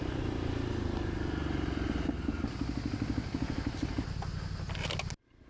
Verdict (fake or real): real